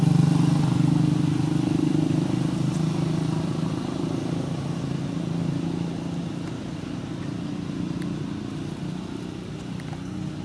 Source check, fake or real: real